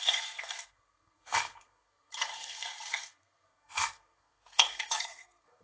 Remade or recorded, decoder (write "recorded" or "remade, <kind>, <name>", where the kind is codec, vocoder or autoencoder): remade, codec, SNAC